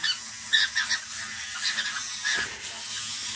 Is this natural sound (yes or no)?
yes